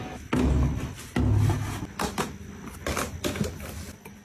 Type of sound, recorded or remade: recorded